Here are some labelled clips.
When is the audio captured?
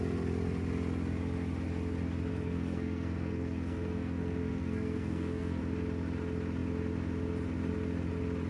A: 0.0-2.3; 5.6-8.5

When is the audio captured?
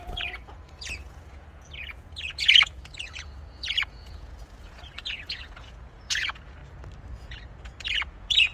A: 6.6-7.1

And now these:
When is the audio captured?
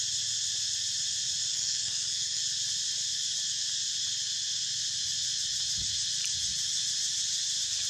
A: 0.0-1.5; 2.4-7.9